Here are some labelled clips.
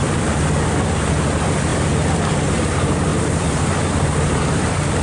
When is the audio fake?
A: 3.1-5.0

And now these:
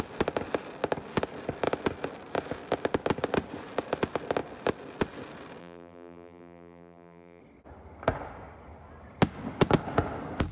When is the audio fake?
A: 5.6-7.4

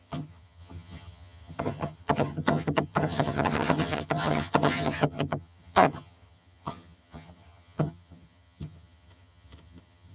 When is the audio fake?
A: 0.0-10.1

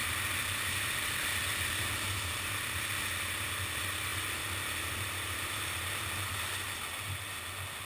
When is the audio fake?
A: none

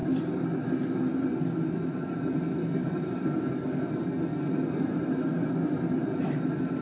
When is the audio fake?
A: 2.8-3.5

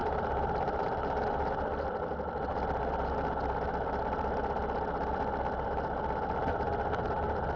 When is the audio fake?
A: 0.0-1.2

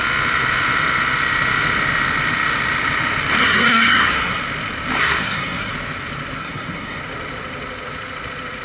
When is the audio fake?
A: 3.4-4.4; 5.0-5.7; 6.4-7.0

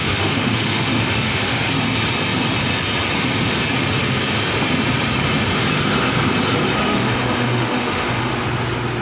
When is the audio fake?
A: 0.0-1.7; 6.8-8.3